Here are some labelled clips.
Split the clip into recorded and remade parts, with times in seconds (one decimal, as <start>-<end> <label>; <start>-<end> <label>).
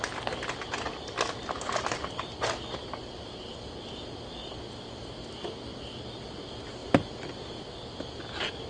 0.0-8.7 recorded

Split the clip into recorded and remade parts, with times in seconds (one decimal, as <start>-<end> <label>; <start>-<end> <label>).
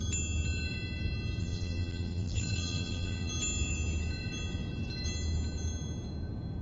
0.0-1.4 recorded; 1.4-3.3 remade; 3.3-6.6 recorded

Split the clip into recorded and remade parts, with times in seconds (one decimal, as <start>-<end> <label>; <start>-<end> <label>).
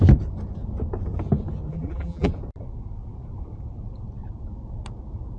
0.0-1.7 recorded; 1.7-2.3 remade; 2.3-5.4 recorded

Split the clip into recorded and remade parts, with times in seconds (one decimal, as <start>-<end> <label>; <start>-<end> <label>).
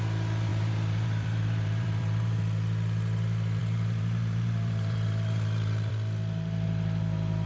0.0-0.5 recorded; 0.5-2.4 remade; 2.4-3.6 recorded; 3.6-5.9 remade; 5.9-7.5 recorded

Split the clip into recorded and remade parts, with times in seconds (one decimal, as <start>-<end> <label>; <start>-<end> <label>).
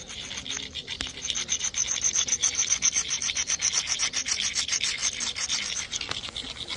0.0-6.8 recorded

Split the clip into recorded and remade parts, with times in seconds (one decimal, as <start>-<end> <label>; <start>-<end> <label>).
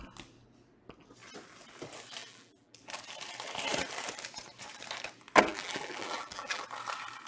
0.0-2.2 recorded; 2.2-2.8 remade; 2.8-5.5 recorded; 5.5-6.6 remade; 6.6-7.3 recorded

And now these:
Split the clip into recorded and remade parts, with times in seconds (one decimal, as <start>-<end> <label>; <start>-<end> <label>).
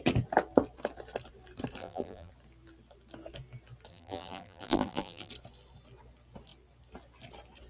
0.0-1.8 recorded; 1.8-2.3 remade; 2.3-3.9 recorded; 3.9-5.3 remade; 5.3-7.7 recorded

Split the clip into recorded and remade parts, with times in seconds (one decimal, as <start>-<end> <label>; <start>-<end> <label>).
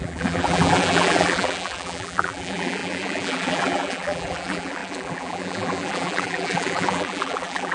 0.0-7.7 remade